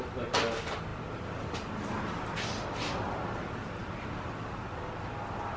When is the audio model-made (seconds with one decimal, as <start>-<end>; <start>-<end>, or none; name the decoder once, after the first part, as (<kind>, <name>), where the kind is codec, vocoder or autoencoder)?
none